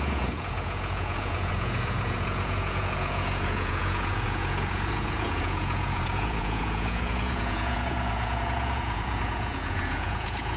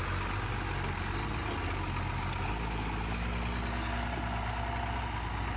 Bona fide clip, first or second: second